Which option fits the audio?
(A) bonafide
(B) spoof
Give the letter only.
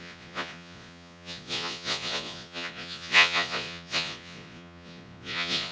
B